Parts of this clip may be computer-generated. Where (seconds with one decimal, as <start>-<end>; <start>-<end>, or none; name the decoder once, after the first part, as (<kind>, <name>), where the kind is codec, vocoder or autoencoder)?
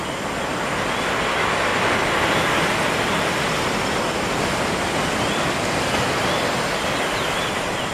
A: none